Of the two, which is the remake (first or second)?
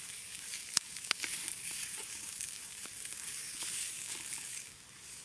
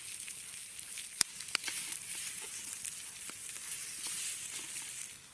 first